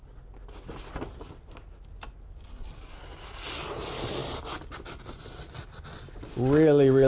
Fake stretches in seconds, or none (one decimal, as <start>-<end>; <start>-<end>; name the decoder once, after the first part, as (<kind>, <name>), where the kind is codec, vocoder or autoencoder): none

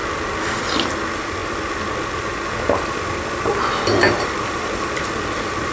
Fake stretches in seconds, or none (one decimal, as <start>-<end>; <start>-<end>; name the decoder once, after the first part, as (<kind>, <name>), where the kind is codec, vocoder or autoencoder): none

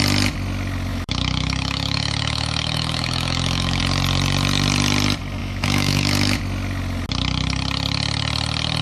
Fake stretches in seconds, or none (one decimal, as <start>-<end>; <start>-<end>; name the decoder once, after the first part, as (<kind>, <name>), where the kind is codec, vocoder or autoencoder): 0.9-3.8 (autoencoder, DAC-VAE); 5.4-6.4

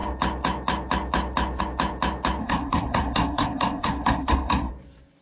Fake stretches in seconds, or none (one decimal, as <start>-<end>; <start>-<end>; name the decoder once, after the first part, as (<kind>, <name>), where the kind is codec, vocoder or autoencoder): 2.4-4.7 (codec, SNAC)

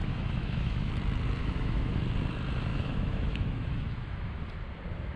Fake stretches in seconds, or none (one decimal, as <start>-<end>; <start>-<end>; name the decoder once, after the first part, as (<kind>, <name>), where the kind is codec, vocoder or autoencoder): 0.0-0.9 (autoencoder, DAC-VAE); 1.4-2.0; 2.7-4.4